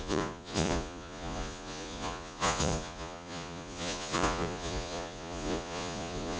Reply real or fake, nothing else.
fake